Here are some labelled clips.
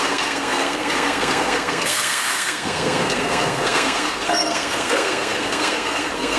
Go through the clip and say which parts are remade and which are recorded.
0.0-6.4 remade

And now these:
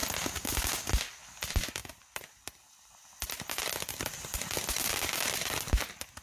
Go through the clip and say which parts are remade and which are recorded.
0.0-6.2 recorded

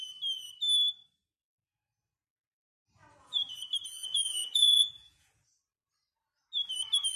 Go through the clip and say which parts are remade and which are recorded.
0.0-3.2 recorded; 3.2-5.3 remade; 5.3-7.2 recorded

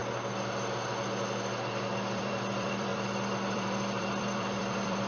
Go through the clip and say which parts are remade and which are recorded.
0.0-1.9 recorded; 1.9-5.1 remade